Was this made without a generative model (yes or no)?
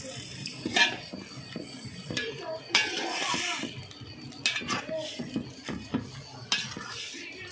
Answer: yes